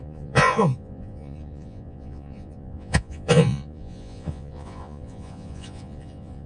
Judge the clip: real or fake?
fake